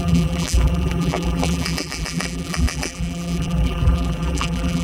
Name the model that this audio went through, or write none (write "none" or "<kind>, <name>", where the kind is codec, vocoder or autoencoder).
vocoder, BigVGAN v2